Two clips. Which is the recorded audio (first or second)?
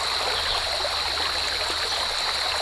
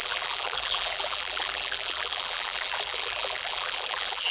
first